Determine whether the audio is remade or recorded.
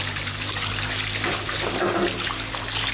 recorded